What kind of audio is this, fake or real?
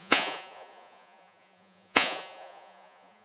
fake